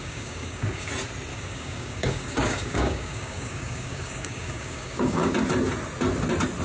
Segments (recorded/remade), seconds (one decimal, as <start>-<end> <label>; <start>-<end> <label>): 0.0-0.9 remade; 0.9-1.3 recorded; 1.3-5.3 remade; 5.3-6.6 recorded